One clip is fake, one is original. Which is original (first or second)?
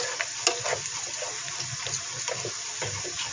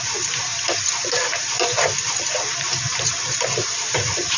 first